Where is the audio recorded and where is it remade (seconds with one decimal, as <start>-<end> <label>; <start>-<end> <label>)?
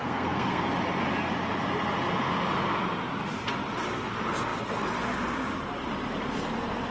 0.0-0.6 remade; 0.6-6.9 recorded